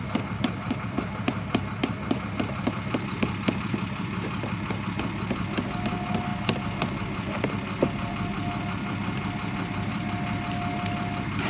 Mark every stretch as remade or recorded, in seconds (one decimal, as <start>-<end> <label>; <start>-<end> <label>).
0.0-11.5 recorded